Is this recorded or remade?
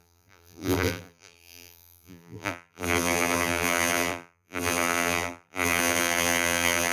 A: remade